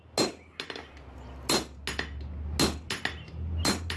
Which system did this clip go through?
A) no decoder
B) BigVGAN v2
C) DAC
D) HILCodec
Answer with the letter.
A